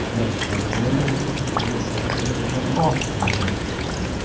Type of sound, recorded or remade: remade